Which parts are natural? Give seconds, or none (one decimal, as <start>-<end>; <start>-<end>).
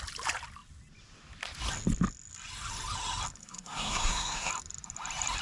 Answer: 0.0-3.4; 4.5-5.4